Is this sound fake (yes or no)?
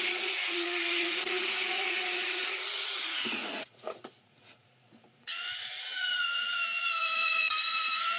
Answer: yes